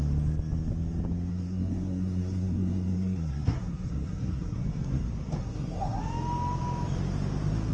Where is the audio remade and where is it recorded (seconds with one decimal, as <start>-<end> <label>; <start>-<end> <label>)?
0.0-1.3 recorded; 1.3-4.6 remade; 4.6-5.4 recorded; 5.4-6.0 remade; 6.0-7.7 recorded